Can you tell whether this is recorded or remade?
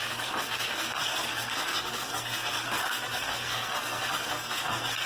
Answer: remade